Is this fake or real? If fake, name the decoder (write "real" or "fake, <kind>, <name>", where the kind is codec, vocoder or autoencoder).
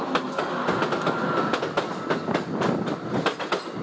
real